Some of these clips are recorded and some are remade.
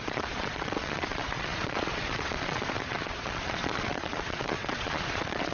remade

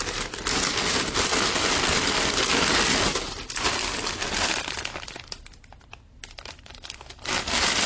recorded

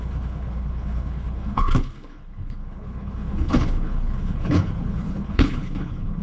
remade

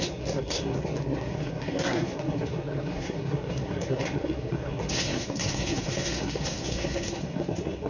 remade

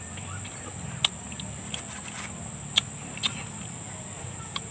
recorded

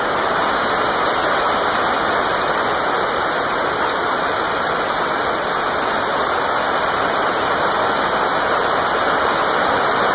recorded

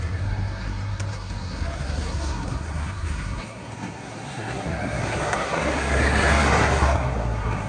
remade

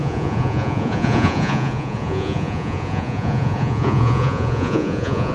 remade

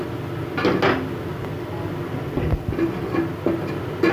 recorded